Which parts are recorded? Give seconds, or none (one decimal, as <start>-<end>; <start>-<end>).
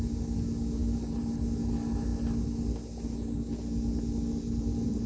0.0-5.1